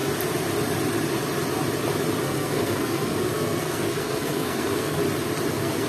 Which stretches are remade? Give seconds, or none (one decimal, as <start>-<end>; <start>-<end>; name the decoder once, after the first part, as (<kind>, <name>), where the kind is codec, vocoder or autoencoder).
2.2-5.0 (codec, SNAC); 5.5-5.9